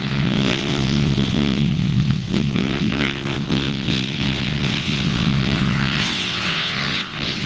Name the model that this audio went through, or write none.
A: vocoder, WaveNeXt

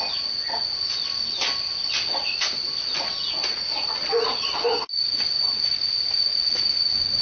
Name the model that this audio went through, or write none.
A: none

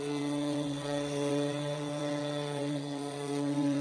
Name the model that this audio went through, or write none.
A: vocoder, WaveNeXt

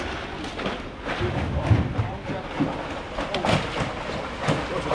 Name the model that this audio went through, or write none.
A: none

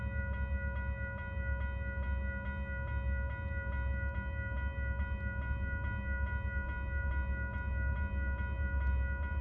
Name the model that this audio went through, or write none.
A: none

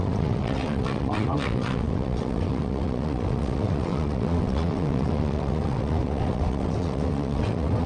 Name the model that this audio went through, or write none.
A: vocoder, WaveNeXt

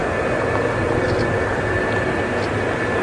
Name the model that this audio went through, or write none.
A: none